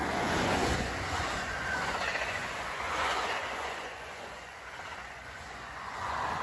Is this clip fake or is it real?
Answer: fake